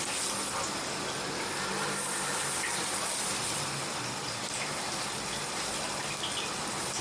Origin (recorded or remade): recorded